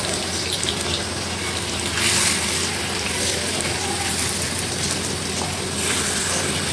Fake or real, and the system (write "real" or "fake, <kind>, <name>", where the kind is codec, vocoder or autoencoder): real